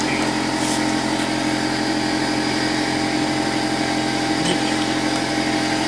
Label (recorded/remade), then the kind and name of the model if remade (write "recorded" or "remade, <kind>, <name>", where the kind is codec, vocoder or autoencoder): recorded